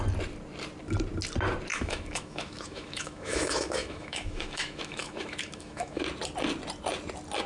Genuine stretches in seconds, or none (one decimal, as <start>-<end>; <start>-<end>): 0.0-1.7; 6.0-7.5